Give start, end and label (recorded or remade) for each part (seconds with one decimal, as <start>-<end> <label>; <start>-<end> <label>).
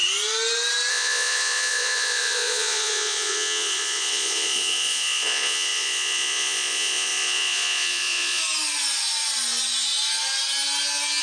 0.0-0.9 recorded; 0.9-8.4 remade; 8.4-11.2 recorded